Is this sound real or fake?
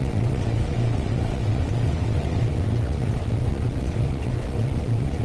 fake